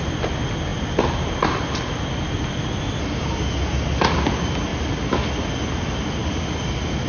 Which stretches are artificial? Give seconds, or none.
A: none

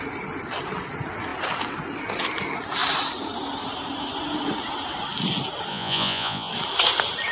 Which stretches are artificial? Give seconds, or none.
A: 5.7-6.5 (vocoder, Vocos)

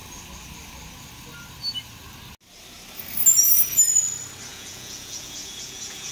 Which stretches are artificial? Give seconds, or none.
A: 4.5-6.1 (vocoder, Vocos)

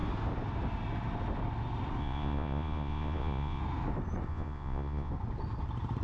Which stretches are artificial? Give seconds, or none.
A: 2.0-3.6 (vocoder, Vocos); 4.3-5.1